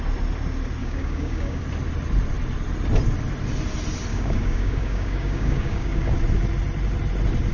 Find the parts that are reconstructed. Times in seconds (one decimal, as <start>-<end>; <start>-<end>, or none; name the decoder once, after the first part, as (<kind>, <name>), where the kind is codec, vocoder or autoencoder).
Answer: 0.8-1.6 (codec, DAC); 4.1-6.1